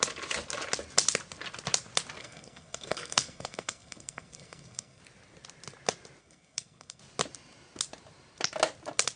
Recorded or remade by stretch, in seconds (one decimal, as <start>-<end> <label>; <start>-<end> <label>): 0.0-2.2 recorded; 2.2-5.0 remade; 5.0-6.2 recorded; 6.2-7.0 remade; 7.0-9.2 recorded